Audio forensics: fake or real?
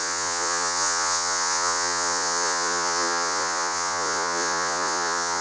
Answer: fake